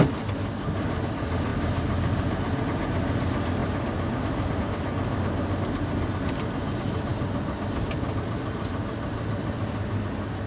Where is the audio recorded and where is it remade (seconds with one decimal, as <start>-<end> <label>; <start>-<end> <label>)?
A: 0.0-10.5 recorded